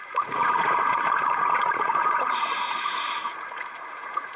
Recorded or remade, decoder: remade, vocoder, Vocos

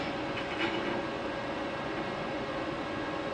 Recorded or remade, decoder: remade, vocoder, Vocos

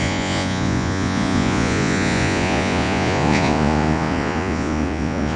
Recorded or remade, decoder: remade, vocoder, Vocos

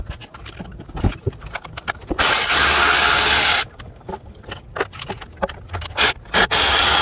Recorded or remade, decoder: recorded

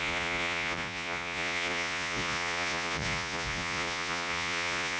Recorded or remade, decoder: remade, vocoder, Vocos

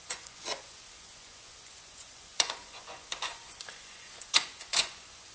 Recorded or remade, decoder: remade, vocoder, Vocos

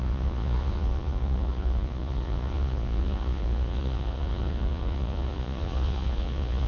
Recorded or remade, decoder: remade, vocoder, Vocos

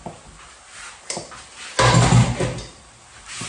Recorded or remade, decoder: recorded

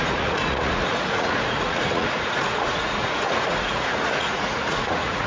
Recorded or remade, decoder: remade, vocoder, Vocos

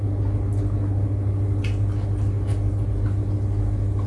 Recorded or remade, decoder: recorded